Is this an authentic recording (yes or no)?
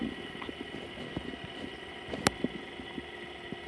yes